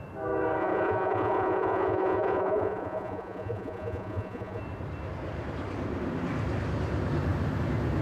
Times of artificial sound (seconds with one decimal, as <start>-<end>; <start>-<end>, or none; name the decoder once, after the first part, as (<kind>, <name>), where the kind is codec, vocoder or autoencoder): 0.6-4.6 (vocoder, Vocos)